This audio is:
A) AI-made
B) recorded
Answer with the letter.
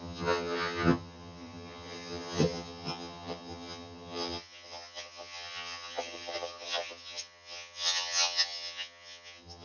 A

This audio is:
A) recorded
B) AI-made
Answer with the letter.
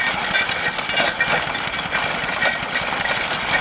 A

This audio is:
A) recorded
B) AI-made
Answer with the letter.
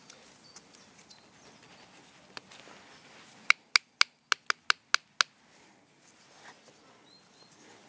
A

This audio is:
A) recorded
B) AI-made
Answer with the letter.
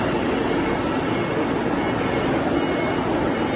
A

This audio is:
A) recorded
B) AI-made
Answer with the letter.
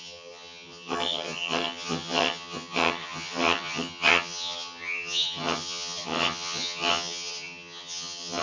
B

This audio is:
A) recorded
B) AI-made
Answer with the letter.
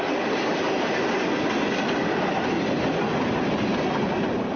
A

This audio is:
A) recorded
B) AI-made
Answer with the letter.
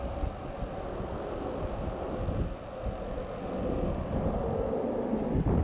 A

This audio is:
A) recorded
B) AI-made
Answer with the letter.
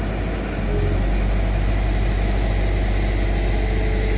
A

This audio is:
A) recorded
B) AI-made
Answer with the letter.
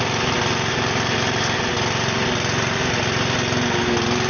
A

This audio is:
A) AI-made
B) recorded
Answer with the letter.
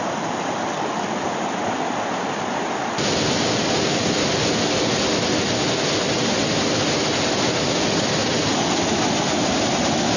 B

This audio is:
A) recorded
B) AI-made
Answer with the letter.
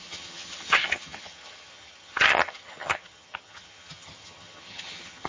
B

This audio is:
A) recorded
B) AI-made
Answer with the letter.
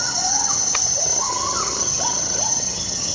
B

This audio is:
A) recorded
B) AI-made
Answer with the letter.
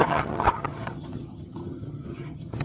B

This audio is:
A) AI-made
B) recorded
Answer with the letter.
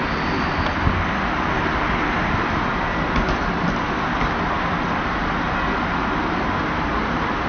B